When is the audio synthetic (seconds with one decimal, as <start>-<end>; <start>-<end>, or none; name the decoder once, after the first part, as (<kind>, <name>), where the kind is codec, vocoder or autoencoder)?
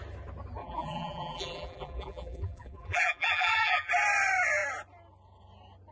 0.6-3.9 (vocoder, BigVGAN v2)